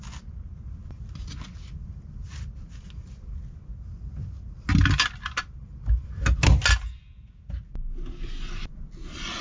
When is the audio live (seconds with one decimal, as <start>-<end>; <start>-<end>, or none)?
0.0-9.4